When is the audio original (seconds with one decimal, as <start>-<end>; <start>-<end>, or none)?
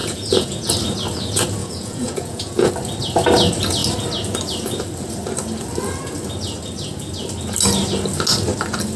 0.7-1.6; 2.7-9.0